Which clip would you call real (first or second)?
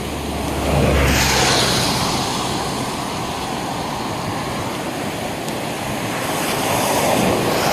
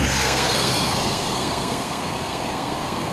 first